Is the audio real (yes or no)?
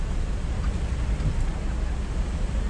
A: yes